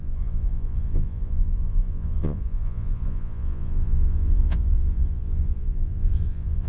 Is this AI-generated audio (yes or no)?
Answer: yes